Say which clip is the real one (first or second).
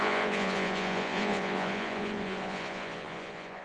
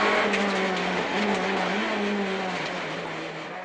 second